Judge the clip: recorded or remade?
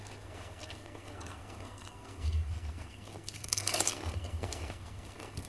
remade